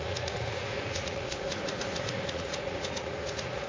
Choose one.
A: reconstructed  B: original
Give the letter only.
A